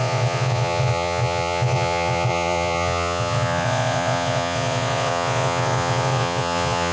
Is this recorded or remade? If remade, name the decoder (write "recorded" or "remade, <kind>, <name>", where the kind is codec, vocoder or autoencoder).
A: remade, vocoder, Vocos